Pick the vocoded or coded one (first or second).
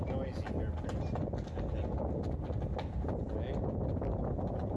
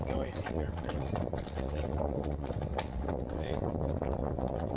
second